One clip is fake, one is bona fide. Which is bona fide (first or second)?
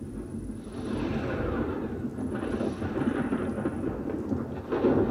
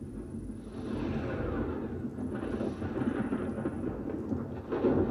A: second